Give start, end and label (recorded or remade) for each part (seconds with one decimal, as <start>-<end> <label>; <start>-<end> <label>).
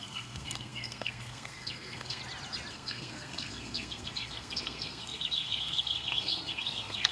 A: 0.0-2.2 remade; 2.2-2.7 recorded; 2.7-7.1 remade